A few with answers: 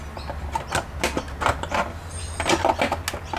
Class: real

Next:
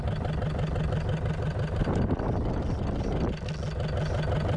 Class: real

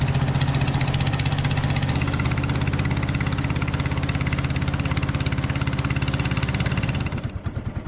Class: real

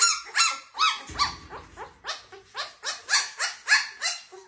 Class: real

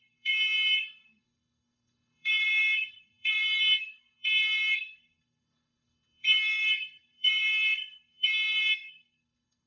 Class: fake